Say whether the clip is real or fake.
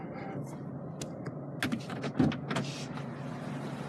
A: real